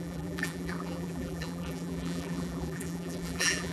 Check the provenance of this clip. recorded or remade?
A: remade